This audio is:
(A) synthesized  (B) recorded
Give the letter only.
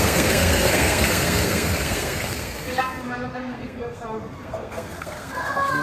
A